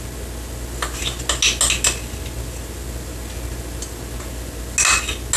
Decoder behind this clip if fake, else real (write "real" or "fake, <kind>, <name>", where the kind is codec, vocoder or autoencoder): real